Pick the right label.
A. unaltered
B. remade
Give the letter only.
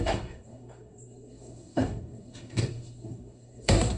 B